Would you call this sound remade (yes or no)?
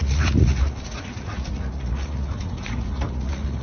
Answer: yes